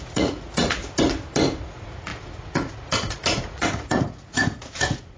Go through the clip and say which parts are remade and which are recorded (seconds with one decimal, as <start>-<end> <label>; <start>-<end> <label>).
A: 0.0-0.8 remade; 0.8-1.6 recorded; 1.6-5.2 remade